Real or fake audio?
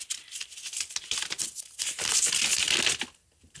real